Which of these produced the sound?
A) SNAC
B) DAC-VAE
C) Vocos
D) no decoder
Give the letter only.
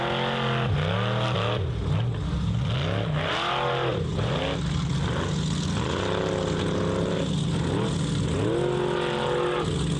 D